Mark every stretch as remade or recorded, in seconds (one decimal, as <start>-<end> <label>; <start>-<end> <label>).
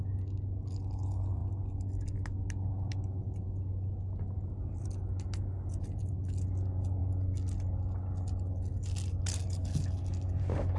0.0-10.8 recorded